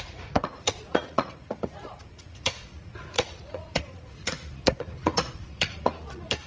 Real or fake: fake